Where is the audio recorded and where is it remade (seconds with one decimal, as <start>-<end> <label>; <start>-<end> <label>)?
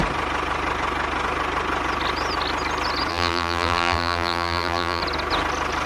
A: 0.0-3.1 recorded; 3.1-5.0 remade; 5.0-5.9 recorded